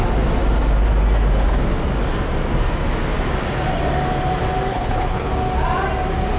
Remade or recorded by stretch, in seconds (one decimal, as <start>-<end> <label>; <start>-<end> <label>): 0.0-4.7 recorded; 4.7-5.3 remade; 5.3-6.4 recorded